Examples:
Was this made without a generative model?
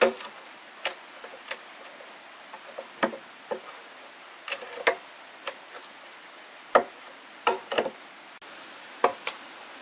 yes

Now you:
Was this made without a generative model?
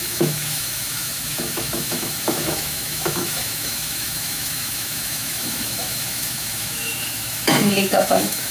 no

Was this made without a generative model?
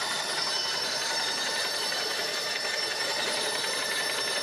no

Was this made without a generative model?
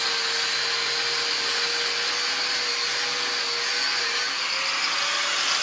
yes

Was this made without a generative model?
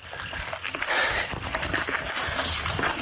yes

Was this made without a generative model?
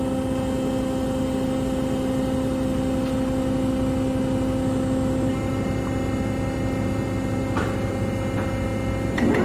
yes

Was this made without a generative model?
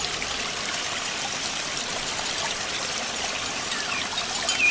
yes